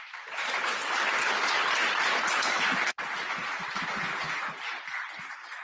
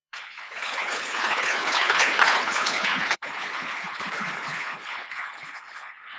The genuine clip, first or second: first